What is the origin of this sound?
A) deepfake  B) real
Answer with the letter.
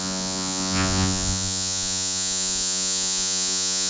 A